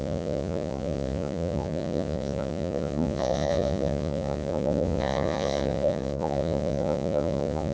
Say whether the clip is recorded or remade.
remade